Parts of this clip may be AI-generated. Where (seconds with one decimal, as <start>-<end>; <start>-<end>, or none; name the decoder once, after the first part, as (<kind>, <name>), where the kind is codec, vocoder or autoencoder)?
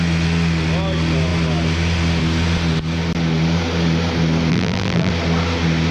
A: 4.5-5.1 (vocoder, BigVGAN v2)